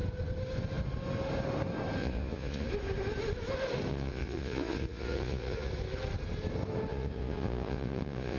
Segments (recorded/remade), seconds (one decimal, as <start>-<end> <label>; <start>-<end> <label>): 0.0-2.0 recorded; 2.0-2.7 remade; 2.7-3.9 recorded; 3.9-5.7 remade; 5.7-6.9 recorded; 6.9-8.4 remade